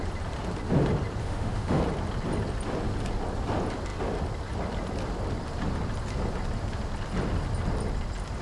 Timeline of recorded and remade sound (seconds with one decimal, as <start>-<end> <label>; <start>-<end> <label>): 0.0-1.2 recorded; 1.2-1.8 remade; 1.8-8.4 recorded